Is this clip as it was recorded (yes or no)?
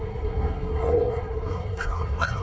no